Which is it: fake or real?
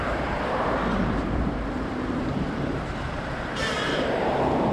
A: fake